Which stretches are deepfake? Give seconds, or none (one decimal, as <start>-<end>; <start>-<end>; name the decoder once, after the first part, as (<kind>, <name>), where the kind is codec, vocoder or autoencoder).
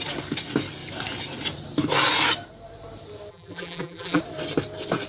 3.3-4.2 (vocoder, BigVGAN v2)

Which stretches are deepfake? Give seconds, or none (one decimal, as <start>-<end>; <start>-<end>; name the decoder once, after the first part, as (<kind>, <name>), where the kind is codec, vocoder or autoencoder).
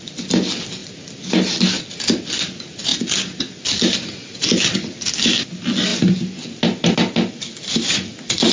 none